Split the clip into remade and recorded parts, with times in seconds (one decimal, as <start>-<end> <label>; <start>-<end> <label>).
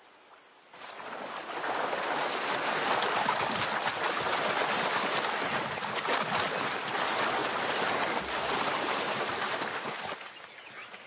0.0-7.4 recorded; 7.4-9.5 remade; 9.5-11.1 recorded